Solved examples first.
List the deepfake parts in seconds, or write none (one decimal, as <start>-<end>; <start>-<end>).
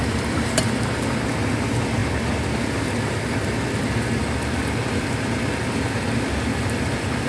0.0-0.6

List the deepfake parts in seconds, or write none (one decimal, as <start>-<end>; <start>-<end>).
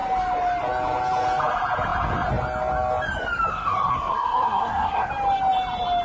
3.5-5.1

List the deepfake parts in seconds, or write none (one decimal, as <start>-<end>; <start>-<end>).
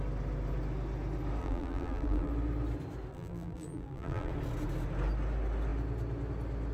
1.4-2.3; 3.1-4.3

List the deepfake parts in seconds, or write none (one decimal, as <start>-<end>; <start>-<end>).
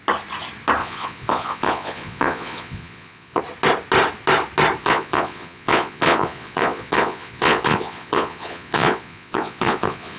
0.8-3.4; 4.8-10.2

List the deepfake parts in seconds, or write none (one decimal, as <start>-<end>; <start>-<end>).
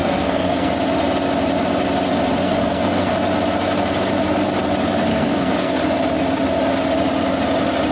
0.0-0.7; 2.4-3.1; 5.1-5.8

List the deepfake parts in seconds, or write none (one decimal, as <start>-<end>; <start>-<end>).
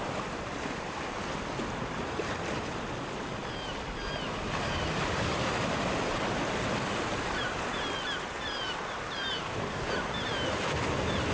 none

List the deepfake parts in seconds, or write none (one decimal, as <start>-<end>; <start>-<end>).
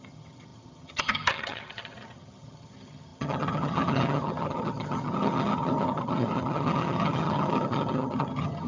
0.0-8.7